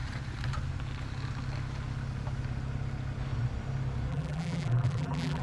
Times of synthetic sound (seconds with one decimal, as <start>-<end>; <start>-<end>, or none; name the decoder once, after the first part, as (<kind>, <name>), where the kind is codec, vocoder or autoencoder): 4.1-5.4 (vocoder, BigVGAN v2)

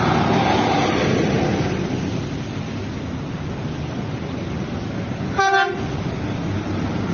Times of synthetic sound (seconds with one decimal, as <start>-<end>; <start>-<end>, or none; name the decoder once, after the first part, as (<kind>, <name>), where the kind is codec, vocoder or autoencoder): none